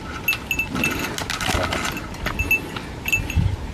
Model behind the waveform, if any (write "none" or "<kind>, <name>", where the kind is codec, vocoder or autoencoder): none